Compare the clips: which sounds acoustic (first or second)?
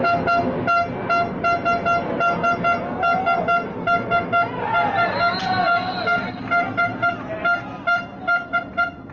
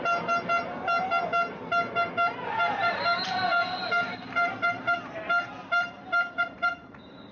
first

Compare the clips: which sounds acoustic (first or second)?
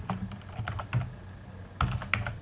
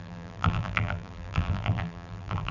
first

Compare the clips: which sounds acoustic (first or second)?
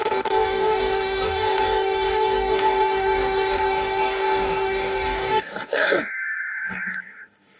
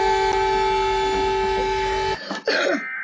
second